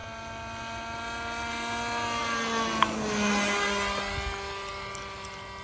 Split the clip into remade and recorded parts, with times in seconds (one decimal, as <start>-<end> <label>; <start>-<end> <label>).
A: 0.0-5.6 recorded